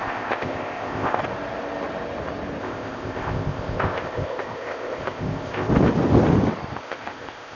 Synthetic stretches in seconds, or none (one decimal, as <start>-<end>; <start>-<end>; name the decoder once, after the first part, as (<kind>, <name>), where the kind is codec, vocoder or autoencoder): 0.0-1.2 (codec, ZipCodec); 2.6-5.7; 6.8-7.5